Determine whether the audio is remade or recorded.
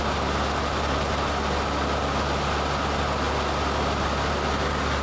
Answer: recorded